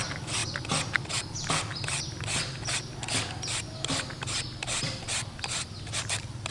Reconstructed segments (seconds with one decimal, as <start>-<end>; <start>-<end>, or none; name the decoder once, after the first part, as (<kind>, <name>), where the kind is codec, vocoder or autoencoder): none